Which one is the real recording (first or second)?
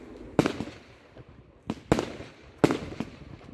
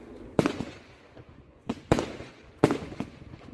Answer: first